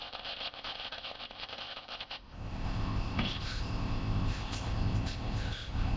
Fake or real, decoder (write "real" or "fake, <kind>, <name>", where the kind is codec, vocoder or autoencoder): fake, codec, ZipCodec